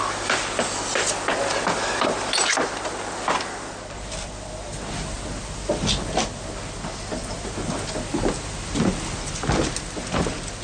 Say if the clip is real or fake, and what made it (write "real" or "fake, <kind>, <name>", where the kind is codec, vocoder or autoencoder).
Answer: real